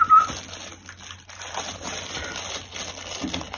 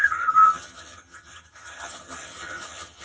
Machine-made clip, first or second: second